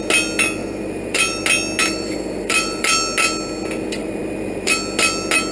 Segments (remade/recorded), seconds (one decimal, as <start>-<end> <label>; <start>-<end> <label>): 0.0-0.6 recorded; 0.6-1.4 remade; 1.4-1.8 recorded; 1.8-2.9 remade; 2.9-4.0 recorded; 4.0-4.7 remade; 4.7-5.5 recorded